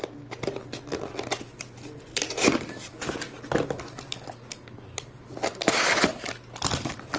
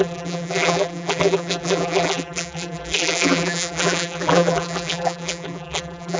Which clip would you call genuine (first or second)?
first